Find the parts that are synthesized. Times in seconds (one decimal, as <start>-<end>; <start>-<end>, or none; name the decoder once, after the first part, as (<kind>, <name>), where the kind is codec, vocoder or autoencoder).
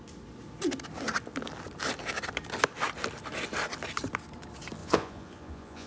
4.8-5.9 (vocoder, Vocos)